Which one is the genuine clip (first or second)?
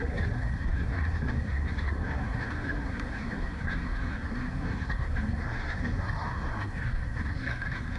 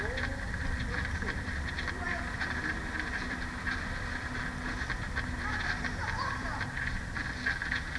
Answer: second